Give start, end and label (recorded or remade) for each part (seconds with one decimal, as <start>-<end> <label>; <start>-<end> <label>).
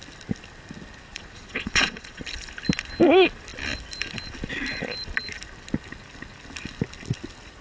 0.0-1.1 recorded; 1.1-2.2 remade; 2.2-7.6 recorded